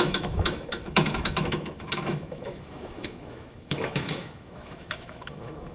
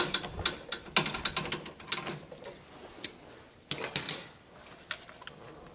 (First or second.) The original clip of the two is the second